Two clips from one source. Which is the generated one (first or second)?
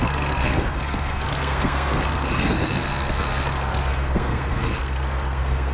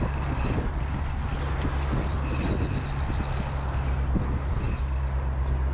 first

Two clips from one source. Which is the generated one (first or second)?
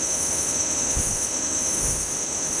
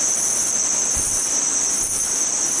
first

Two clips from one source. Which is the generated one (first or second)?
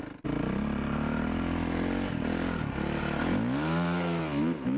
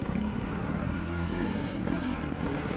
second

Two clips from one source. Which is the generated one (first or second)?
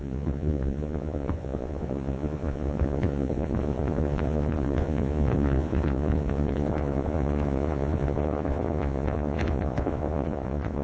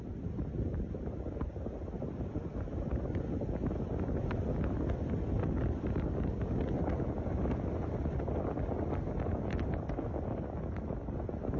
first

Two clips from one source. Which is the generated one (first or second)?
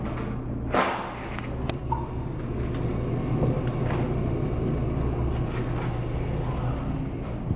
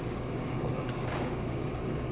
second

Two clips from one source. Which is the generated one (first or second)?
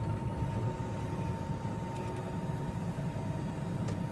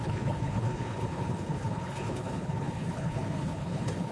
second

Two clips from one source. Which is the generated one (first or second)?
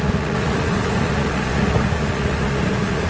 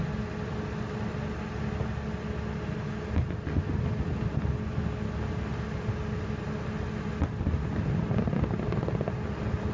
first